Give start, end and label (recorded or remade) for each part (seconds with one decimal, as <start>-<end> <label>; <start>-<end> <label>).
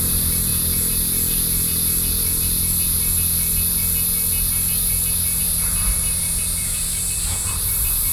0.0-0.5 remade; 0.5-5.4 recorded; 5.4-8.1 remade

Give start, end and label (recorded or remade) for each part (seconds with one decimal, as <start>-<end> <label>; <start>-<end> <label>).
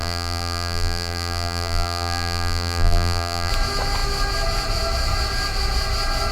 0.0-3.5 remade; 3.5-6.3 recorded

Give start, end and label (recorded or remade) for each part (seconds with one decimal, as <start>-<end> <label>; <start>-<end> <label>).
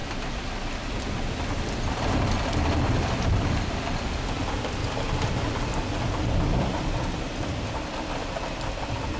0.0-0.9 recorded; 0.9-4.8 remade; 4.8-5.3 recorded; 5.3-9.2 remade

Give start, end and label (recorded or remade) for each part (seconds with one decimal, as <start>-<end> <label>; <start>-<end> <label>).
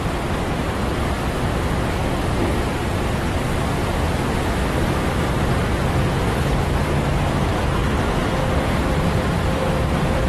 0.0-2.0 recorded; 2.0-2.7 remade; 2.7-7.8 recorded; 7.8-10.3 remade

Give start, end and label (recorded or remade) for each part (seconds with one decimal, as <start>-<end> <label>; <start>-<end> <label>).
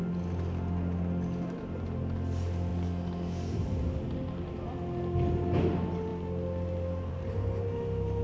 0.0-8.2 recorded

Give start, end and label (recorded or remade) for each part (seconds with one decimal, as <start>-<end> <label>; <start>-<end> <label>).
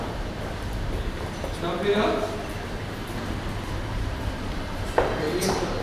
0.0-3.0 remade; 3.0-3.8 recorded; 3.8-5.8 remade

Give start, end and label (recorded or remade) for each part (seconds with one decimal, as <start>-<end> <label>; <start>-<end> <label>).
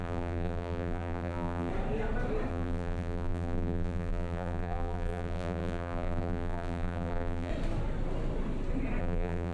0.0-1.7 remade; 1.7-2.5 recorded; 2.5-7.5 remade; 7.5-9.0 recorded; 9.0-9.5 remade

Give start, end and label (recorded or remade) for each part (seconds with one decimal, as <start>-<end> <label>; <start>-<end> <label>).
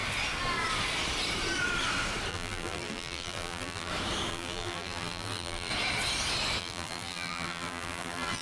0.0-2.3 recorded; 2.3-3.9 remade; 3.9-4.3 recorded; 4.3-5.7 remade; 5.7-6.6 recorded; 6.6-8.4 remade